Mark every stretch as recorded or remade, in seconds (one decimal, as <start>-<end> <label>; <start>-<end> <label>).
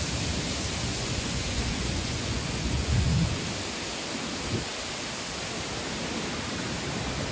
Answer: 0.0-0.9 recorded; 0.9-3.4 remade; 3.4-7.3 recorded